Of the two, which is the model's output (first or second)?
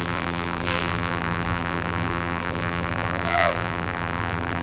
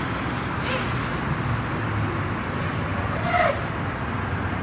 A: first